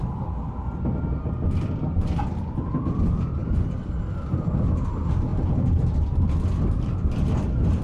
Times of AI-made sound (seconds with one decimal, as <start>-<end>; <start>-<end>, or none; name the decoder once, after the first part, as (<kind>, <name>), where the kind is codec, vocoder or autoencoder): 3.4-4.0 (vocoder, BigVGAN v2)